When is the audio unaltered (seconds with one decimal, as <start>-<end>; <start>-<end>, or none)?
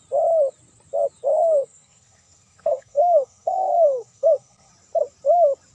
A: 0.0-1.3; 4.7-5.7